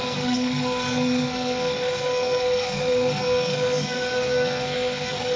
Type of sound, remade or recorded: remade